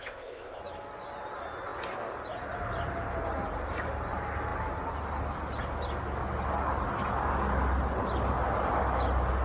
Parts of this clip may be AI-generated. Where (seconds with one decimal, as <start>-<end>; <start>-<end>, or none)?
0.0-0.6